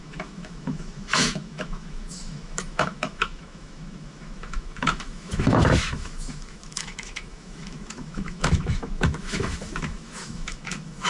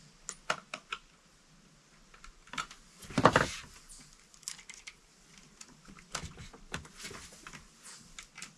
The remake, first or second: first